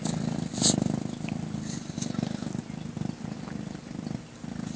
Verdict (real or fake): real